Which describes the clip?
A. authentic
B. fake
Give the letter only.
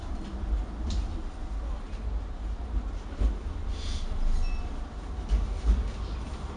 A